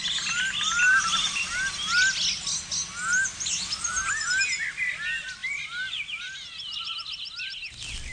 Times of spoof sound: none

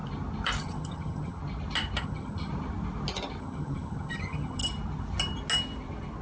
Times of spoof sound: 0.6-1.4 (vocoder, HiFi-GAN); 2.0-2.5; 3.4-4.6

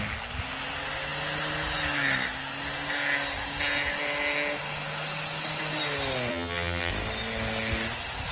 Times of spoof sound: 6.3-6.9 (vocoder, BigVGAN v2)

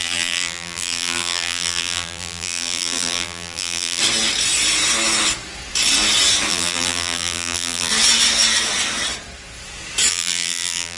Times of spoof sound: 0.0-4.0 (vocoder, BigVGAN v2); 6.5-7.9; 10.1-11.0

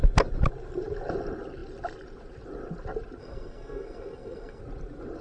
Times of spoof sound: 3.2-4.6 (codec, SNAC)

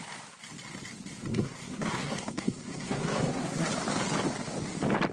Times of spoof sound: 1.3-3.7 (codec, SNAC)